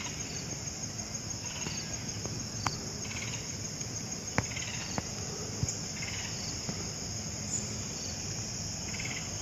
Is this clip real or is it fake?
real